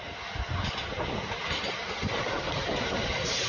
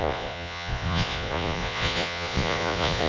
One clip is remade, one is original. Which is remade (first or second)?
second